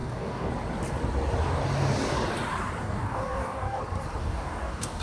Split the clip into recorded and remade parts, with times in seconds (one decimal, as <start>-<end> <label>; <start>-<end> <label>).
0.0-0.5 remade; 0.5-2.8 recorded; 2.8-3.8 remade; 3.8-4.2 recorded; 4.2-5.0 remade